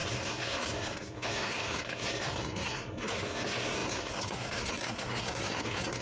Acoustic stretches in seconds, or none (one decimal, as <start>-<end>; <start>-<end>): none